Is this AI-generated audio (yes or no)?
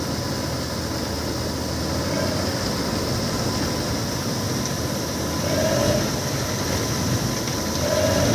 no